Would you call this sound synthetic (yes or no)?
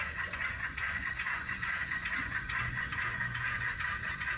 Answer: yes